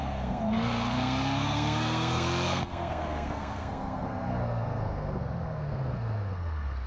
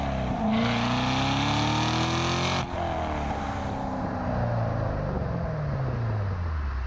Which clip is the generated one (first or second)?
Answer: first